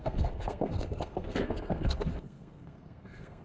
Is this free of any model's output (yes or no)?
no